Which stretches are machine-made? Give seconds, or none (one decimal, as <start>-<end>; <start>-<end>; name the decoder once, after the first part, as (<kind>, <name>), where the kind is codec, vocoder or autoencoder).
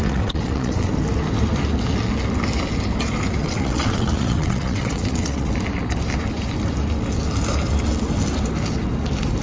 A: 0.0-0.9 (vocoder, WaveNeXt); 3.4-5.5